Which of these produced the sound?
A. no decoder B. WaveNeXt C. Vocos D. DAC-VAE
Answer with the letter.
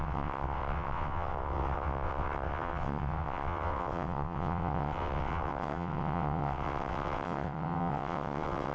B